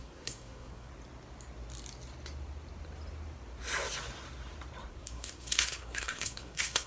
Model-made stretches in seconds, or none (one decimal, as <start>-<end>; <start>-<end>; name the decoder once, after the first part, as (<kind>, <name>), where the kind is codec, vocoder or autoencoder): 0.0-0.9 (codec, SNAC); 4.9-6.9